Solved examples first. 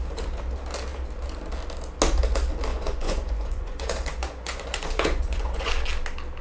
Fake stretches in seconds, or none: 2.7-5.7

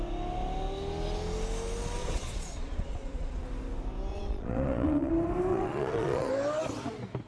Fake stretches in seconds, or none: 2.0-3.4; 4.1-5.1; 5.5-6.3

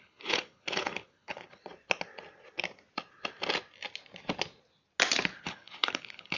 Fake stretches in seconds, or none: 0.0-1.6; 5.4-6.4

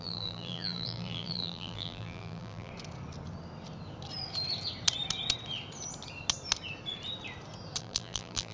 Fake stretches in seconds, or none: 0.0-2.7; 7.8-8.5

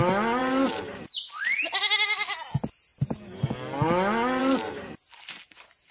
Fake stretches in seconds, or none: 0.4-1.3; 2.9-3.5; 4.4-5.9